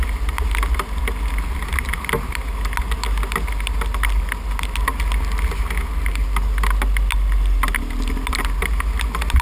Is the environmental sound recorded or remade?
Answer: recorded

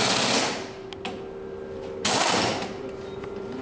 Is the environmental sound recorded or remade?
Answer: recorded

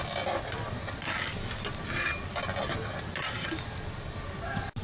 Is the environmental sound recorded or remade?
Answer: recorded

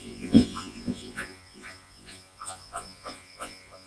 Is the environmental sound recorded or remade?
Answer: remade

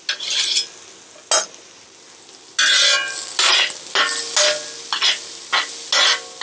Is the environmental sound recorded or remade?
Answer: recorded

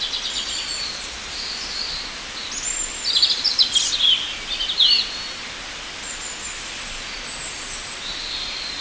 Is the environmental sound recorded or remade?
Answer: recorded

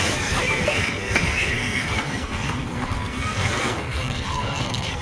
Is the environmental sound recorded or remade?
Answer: remade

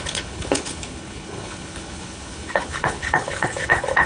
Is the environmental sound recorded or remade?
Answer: remade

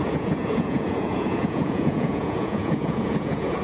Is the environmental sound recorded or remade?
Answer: remade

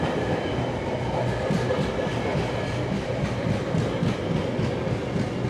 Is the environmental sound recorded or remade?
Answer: recorded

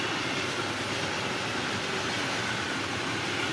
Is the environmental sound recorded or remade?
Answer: recorded